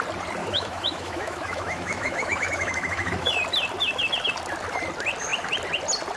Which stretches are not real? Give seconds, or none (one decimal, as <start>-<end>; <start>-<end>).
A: 0.4-3.3